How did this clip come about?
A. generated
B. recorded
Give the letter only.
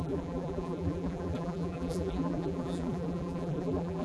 A